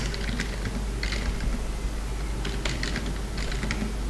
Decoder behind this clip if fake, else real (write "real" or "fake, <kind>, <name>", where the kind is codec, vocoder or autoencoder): real